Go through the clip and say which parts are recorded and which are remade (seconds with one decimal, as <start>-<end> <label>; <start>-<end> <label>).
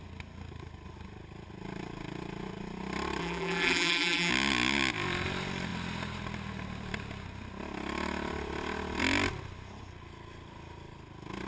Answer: 0.0-3.2 recorded; 3.2-4.3 remade; 4.3-11.5 recorded